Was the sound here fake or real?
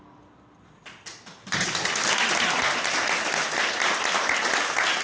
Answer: real